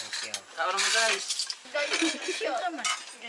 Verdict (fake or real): real